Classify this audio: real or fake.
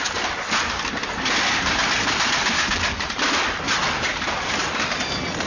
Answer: real